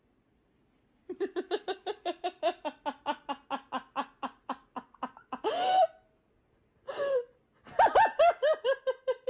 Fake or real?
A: real